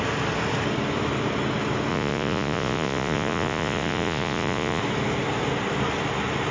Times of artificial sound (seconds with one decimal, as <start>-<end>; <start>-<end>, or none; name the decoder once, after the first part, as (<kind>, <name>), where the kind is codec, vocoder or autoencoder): 1.9-4.8 (vocoder, Vocos)